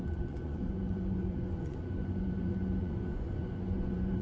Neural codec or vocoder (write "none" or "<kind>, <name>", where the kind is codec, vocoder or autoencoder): vocoder, Vocos